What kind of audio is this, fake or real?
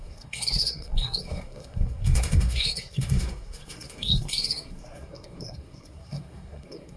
fake